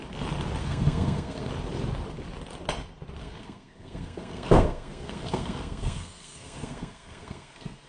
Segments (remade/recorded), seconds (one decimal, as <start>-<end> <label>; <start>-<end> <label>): 0.0-0.6 recorded; 0.6-1.5 remade; 1.5-3.2 recorded; 3.2-7.9 remade